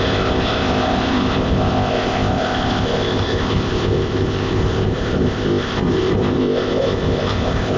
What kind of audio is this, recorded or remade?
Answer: remade